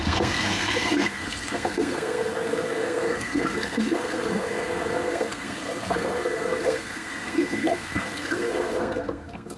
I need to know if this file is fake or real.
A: fake